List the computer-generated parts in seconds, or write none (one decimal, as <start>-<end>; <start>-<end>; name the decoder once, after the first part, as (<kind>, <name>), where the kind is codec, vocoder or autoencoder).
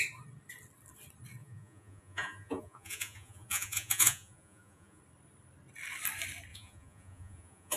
1.4-5.0 (vocoder, Vocos); 6.5-7.8